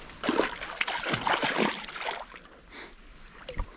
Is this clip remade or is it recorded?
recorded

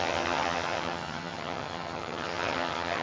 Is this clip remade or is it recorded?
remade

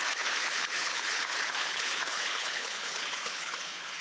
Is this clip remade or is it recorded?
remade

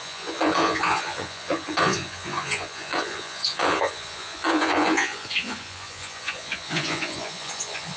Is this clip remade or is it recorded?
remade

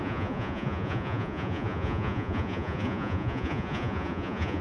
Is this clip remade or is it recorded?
remade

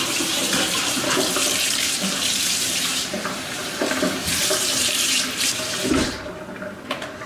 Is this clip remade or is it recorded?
remade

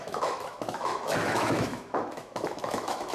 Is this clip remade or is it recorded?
remade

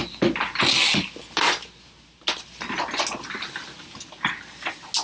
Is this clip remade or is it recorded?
recorded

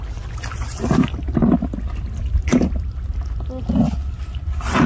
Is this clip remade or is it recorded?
recorded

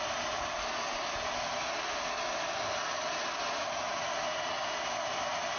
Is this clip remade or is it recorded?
recorded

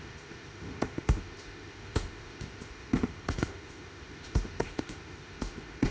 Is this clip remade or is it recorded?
remade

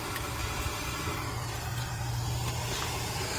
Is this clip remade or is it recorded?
remade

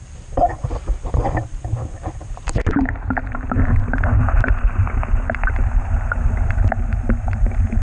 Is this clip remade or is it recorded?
remade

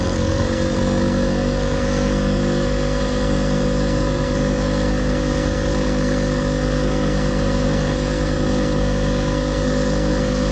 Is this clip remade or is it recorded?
remade